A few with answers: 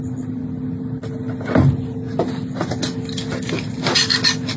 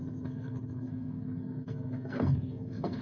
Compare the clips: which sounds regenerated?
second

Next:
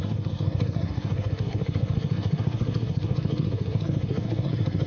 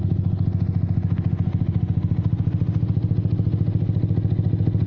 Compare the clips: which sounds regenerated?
first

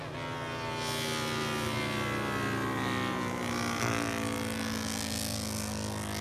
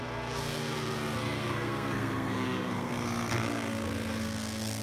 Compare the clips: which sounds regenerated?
second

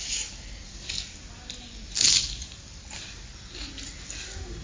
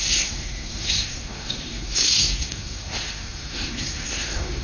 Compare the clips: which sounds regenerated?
second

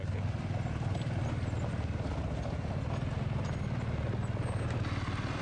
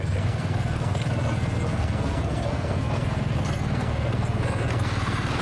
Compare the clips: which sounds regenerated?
second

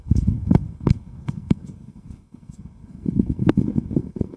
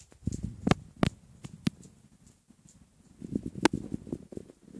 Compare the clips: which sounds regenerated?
first